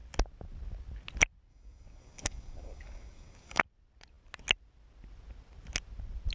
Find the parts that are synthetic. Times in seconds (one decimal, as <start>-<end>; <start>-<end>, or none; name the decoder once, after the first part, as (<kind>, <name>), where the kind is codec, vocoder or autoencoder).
1.5-3.6 (codec, DAC)